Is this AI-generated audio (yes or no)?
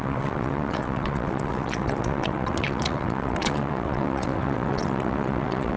yes